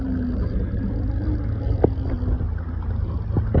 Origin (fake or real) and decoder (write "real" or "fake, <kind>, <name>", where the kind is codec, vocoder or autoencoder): real